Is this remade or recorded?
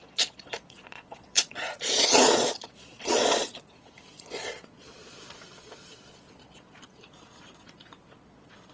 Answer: remade